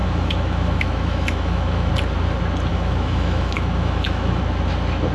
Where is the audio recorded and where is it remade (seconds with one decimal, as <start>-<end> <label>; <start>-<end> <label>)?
0.0-1.9 remade; 1.9-2.7 recorded; 2.7-4.4 remade; 4.4-5.1 recorded